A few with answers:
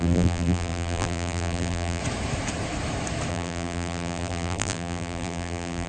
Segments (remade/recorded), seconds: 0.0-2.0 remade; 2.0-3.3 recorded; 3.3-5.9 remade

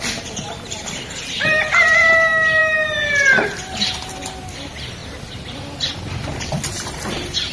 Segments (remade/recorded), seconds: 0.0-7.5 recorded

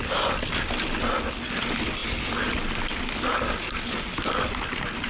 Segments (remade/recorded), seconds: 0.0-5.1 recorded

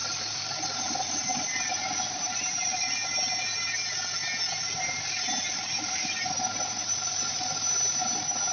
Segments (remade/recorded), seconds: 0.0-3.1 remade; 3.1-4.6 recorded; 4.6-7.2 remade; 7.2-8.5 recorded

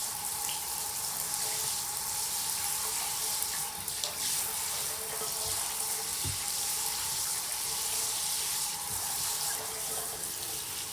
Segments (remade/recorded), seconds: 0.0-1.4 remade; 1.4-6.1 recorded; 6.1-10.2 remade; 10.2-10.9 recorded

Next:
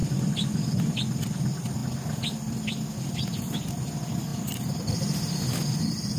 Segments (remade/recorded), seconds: 0.0-6.2 recorded